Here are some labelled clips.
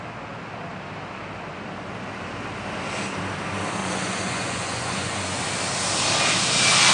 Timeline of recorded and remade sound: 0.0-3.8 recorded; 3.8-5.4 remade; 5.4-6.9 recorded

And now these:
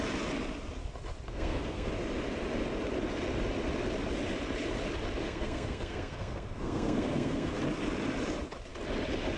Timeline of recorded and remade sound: 0.0-1.3 recorded; 1.3-1.9 remade; 1.9-5.2 recorded; 5.2-7.6 remade; 7.6-9.4 recorded